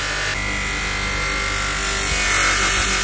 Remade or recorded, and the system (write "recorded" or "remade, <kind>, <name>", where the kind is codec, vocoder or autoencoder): recorded